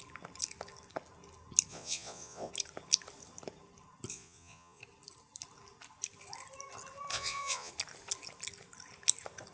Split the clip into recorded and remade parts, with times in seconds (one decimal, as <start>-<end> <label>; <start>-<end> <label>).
0.0-1.7 recorded; 1.7-2.5 remade; 2.5-4.1 recorded; 4.1-4.8 remade; 4.8-7.1 recorded; 7.1-7.7 remade; 7.7-9.5 recorded